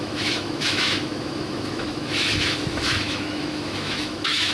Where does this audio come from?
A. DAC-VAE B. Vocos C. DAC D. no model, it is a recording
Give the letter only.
A